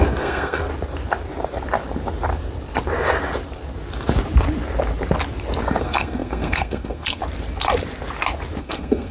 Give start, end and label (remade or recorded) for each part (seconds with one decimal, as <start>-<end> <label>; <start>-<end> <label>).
0.0-0.7 remade; 0.7-5.8 recorded; 5.8-7.2 remade; 7.2-8.6 recorded; 8.6-9.1 remade